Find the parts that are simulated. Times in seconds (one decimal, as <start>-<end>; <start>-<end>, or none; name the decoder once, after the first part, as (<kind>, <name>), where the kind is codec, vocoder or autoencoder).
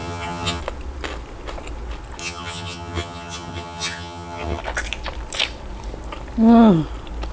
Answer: 0.0-0.6 (vocoder, HiFi-GAN); 2.2-4.6